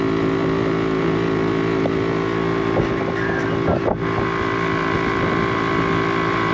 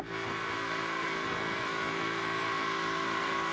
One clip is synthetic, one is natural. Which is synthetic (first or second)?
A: second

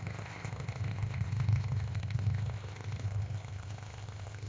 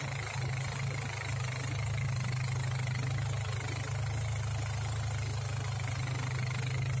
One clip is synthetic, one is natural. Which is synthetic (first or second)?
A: first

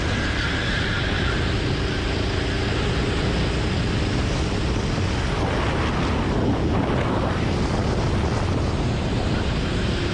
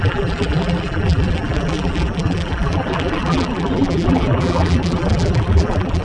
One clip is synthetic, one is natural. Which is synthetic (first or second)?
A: second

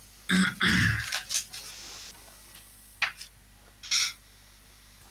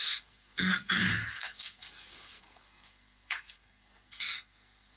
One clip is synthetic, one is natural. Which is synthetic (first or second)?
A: second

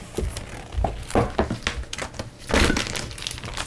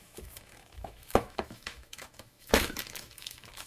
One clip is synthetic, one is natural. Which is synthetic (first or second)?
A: second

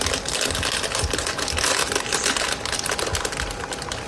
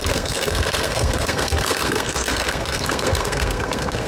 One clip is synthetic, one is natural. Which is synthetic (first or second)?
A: second